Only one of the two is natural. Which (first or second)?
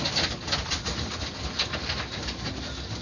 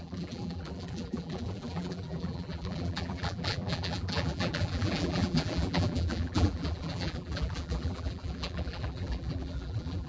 first